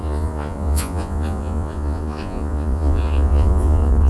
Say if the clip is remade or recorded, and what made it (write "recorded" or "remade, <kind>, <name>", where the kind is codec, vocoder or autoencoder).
remade, vocoder, Vocos